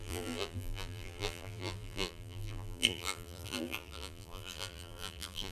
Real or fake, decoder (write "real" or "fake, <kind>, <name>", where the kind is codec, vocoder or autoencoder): fake, vocoder, BigVGAN v2